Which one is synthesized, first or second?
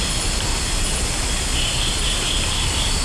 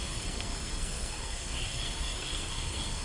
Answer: second